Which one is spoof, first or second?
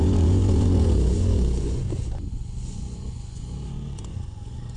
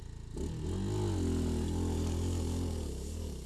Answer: first